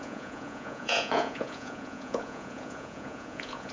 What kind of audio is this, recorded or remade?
remade